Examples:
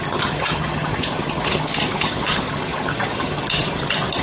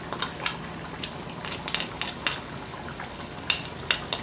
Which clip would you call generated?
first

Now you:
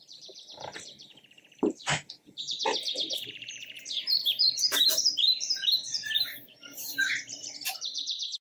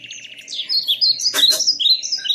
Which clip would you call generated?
first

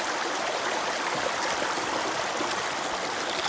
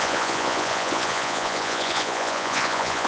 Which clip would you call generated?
second